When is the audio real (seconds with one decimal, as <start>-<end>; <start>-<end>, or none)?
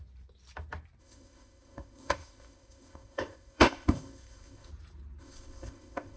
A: 0.0-1.0; 4.7-5.2